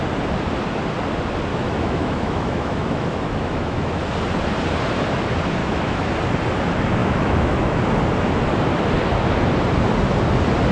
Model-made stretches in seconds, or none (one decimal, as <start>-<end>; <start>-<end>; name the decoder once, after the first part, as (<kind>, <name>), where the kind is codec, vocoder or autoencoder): 1.5-4.0 (autoencoder, DAC-VAE); 5.6-6.1; 7.0-7.8